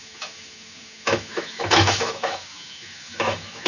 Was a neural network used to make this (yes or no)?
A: yes